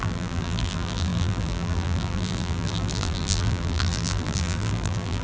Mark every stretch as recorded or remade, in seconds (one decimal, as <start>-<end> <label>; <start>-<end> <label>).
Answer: 0.0-5.2 remade